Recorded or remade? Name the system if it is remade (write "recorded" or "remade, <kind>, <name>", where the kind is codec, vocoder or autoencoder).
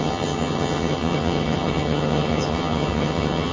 remade, vocoder, HiFi-GAN